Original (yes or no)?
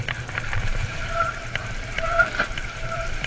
no